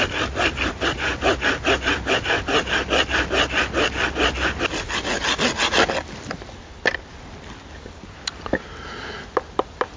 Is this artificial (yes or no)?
no